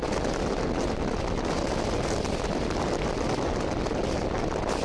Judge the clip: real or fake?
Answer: real